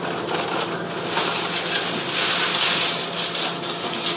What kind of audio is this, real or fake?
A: real